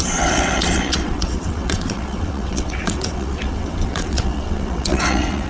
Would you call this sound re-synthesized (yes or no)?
yes